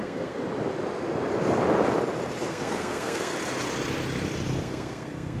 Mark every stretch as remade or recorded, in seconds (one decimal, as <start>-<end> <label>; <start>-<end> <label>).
0.0-0.4 remade; 0.4-2.5 recorded; 2.5-3.3 remade; 3.3-4.6 recorded; 4.6-5.4 remade